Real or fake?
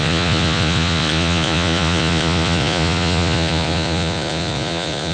fake